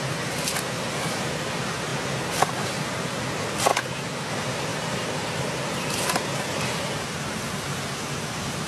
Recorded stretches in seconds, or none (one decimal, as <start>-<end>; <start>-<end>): 0.0-8.7

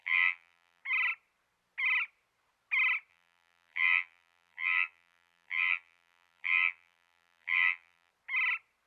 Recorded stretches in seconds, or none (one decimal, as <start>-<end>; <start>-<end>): 0.8-3.1; 8.1-8.9

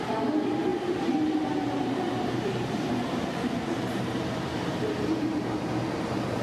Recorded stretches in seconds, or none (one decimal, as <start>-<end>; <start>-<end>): none

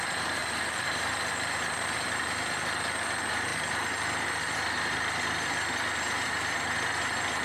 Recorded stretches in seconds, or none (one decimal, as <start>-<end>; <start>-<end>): 0.0-0.4; 1.1-7.4